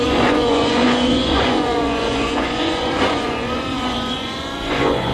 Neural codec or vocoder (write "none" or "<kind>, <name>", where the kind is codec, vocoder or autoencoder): vocoder, Vocos